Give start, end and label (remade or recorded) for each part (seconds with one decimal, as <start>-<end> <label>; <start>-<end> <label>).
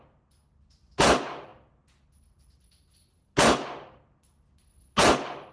0.0-5.5 recorded